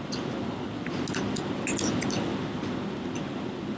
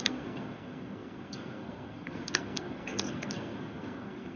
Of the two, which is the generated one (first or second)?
second